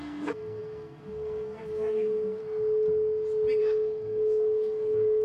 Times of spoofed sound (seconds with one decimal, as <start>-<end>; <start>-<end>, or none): 0.0-2.4; 3.6-5.2